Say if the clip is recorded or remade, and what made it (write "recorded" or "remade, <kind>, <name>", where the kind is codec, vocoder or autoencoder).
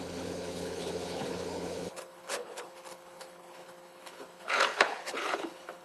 remade, codec, HILCodec